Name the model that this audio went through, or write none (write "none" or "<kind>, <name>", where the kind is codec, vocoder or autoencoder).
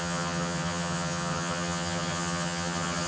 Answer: vocoder, HiFi-GAN